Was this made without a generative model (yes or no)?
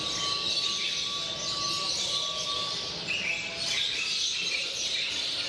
yes